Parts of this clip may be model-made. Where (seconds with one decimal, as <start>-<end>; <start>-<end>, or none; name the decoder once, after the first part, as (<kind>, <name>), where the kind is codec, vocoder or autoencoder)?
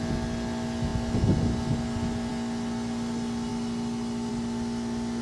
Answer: none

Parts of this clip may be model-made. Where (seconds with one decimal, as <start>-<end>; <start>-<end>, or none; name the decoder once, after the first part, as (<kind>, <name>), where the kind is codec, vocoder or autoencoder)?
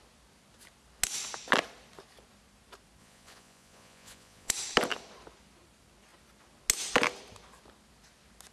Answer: 3.0-4.5 (vocoder, Vocos)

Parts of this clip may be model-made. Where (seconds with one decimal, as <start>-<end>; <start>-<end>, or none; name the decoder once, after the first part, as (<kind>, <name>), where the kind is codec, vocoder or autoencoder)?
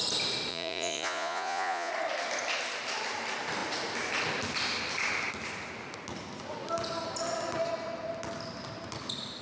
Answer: 0.5-1.9 (vocoder, Vocos)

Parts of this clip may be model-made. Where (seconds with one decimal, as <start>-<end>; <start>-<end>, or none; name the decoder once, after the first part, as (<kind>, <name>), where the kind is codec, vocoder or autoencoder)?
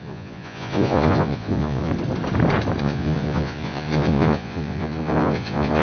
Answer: 0.0-1.9 (vocoder, Vocos); 2.8-5.8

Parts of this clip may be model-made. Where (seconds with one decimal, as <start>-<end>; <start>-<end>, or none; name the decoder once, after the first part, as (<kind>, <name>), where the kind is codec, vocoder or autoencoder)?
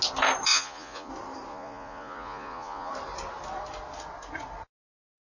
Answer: 0.5-1.1 (vocoder, Vocos); 1.5-2.9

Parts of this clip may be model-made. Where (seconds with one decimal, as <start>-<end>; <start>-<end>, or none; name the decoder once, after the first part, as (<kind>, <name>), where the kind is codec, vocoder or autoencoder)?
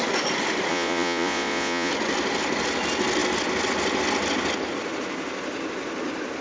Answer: 0.7-1.9 (vocoder, Vocos)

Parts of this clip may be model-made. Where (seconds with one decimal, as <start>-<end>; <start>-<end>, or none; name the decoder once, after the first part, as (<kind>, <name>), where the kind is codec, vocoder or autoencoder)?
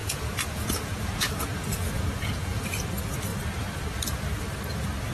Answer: 0.0-2.6 (vocoder, Vocos)